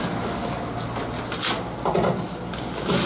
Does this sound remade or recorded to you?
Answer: recorded